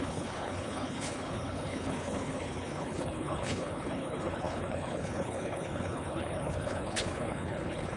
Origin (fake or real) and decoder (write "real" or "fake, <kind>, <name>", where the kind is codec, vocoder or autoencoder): fake, codec, HILCodec